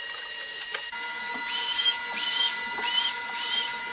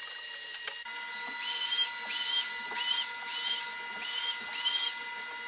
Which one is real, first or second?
second